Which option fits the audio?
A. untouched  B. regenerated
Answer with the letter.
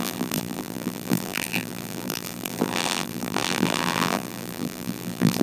B